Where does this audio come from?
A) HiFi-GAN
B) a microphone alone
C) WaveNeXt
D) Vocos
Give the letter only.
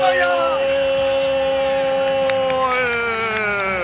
B